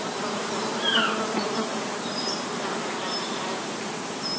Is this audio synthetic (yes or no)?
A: yes